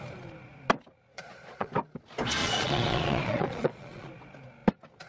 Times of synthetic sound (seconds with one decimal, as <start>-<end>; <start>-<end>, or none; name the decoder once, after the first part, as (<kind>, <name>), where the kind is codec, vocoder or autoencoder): 1.1-1.7 (vocoder, Vocos); 2.4-4.1